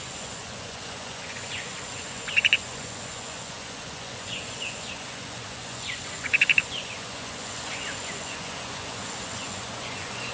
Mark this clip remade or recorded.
remade